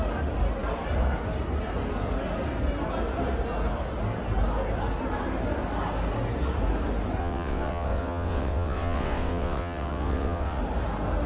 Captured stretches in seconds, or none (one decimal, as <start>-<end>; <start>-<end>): 0.0-7.2; 10.6-11.3